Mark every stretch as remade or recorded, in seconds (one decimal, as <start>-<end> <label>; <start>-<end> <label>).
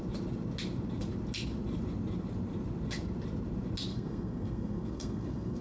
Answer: 0.0-3.9 recorded; 3.9-5.6 remade